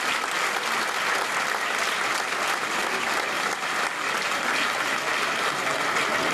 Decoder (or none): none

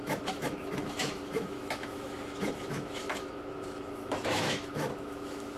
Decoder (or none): autoencoder, DAC-VAE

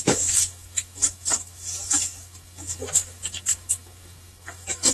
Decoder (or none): autoencoder, DAC-VAE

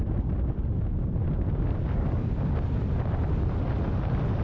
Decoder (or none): none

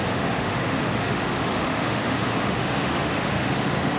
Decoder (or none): autoencoder, DAC-VAE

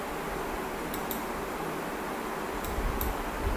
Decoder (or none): none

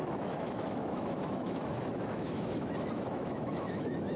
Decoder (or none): autoencoder, DAC-VAE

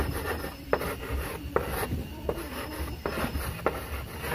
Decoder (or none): none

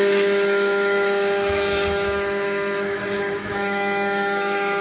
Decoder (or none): autoencoder, DAC-VAE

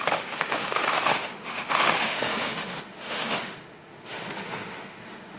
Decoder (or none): autoencoder, DAC-VAE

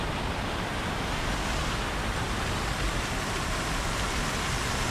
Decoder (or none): none